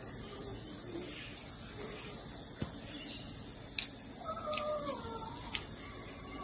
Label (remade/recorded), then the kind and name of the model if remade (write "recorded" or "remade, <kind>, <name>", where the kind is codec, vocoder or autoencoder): recorded